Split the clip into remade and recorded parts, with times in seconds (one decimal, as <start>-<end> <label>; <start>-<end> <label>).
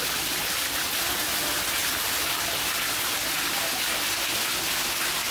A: 0.0-5.3 recorded